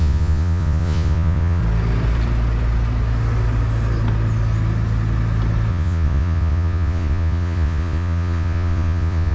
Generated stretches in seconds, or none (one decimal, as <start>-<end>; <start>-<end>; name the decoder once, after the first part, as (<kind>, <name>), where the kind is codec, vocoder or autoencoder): 0.0-1.6 (vocoder, Vocos); 5.7-9.3